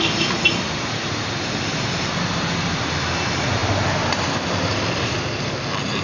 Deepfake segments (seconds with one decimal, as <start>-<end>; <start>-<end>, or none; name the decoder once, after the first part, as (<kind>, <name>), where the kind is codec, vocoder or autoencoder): none